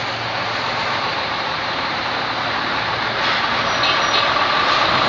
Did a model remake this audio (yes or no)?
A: no